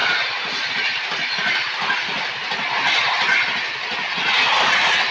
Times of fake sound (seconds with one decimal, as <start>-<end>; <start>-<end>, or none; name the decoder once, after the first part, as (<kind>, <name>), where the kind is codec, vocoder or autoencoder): 0.7-1.4 (vocoder, BigVGAN v2); 4.5-5.1